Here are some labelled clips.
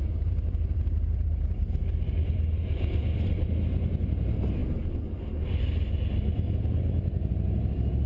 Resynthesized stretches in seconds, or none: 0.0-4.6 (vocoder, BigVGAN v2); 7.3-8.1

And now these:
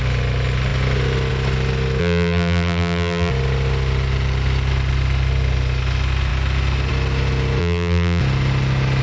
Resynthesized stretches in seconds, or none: 2.0-3.3 (vocoder, BigVGAN v2); 7.6-8.2